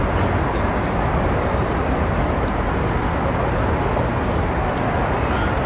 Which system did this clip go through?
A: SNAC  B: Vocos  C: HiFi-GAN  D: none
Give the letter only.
D